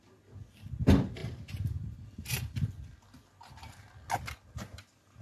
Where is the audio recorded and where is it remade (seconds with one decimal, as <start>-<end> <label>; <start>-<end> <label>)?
0.0-5.2 recorded